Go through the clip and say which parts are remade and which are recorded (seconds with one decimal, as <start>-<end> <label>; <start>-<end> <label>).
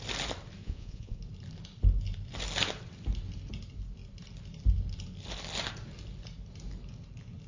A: 0.0-0.6 recorded; 0.6-1.2 remade; 1.2-7.5 recorded